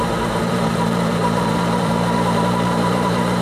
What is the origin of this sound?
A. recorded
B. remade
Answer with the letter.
B